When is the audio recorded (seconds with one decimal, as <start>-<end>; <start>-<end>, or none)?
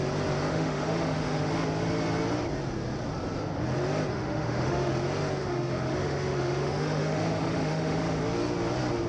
0.0-0.5; 1.5-4.1; 4.9-5.4; 8.2-9.1